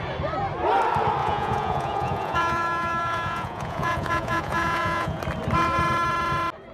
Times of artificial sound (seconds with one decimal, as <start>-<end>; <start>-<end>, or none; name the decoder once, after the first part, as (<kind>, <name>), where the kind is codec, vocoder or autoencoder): 1.2-5.2 (vocoder, Vocos)